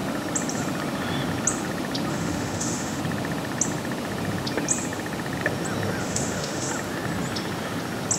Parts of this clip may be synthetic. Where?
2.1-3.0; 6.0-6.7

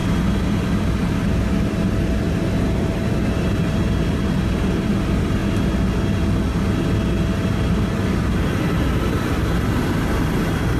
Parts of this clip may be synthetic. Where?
0.5-5.4; 7.7-10.8

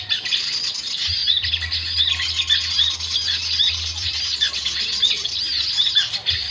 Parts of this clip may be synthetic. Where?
none

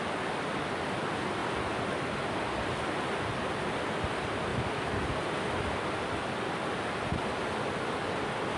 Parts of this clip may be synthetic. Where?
none